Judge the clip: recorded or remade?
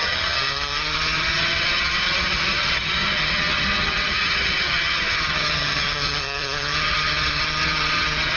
remade